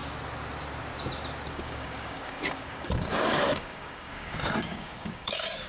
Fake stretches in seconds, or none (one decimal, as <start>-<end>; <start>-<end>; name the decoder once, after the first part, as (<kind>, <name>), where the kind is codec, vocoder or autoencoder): 1.5-5.7 (codec, DAC)